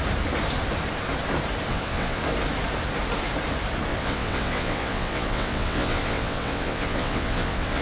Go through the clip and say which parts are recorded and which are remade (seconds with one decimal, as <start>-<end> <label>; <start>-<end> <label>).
0.0-1.7 recorded; 1.7-2.2 remade; 2.2-3.9 recorded; 3.9-7.8 remade